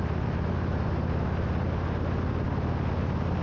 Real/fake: real